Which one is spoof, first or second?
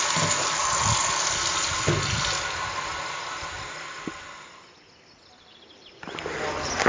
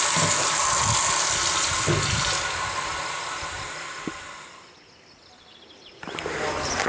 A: second